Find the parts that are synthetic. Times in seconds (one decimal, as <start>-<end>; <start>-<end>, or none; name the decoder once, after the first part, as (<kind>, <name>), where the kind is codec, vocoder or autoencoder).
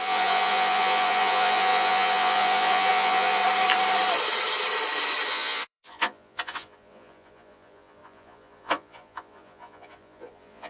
0.0-3.4 (vocoder, Vocos); 5.3-10.7